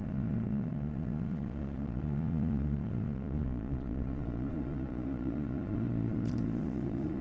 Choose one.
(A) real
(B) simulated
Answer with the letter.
B